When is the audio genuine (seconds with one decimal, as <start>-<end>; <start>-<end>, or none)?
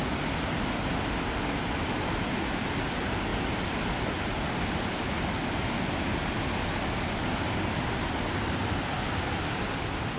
0.0-10.2